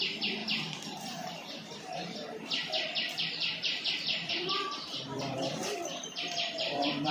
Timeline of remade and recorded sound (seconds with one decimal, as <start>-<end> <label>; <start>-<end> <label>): 0.0-7.1 remade